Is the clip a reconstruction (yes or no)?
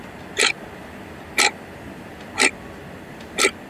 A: no